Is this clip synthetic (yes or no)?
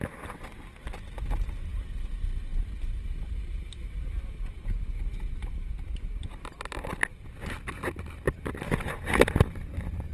no